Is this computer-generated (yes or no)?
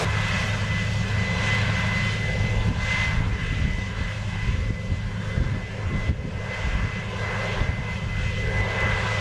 no